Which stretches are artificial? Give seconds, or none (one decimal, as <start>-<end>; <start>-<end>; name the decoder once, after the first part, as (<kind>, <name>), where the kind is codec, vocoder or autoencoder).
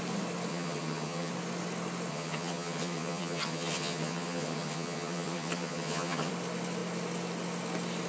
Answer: 0.5-1.3 (vocoder, HiFi-GAN); 2.1-6.3